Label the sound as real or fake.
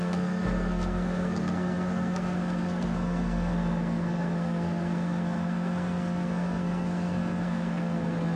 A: fake